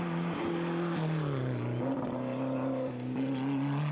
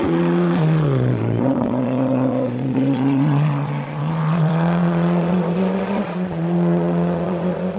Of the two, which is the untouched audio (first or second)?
first